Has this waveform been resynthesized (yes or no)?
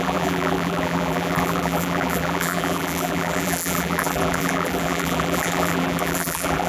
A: yes